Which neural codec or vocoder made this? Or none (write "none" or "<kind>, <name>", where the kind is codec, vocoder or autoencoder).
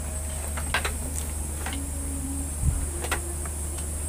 none